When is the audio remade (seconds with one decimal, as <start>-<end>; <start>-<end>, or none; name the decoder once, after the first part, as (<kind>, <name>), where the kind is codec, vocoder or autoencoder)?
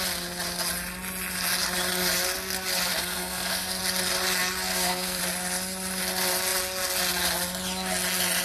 2.9-3.8 (codec, SNAC); 4.7-5.2